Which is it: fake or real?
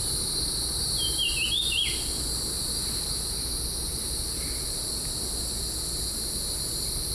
real